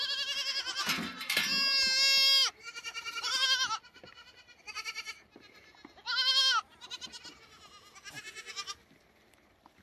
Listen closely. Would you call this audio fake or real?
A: real